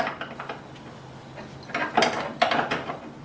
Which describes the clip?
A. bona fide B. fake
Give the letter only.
A